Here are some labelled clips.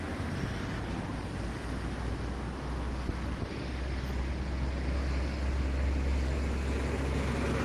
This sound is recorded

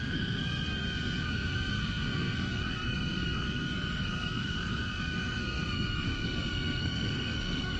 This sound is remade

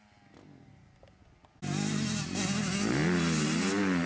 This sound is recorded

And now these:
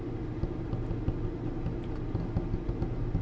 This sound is recorded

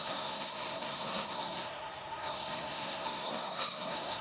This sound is remade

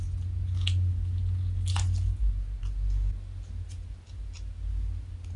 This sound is recorded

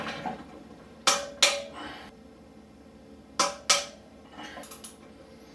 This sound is recorded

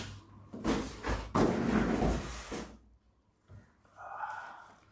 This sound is recorded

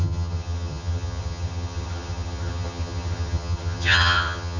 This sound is remade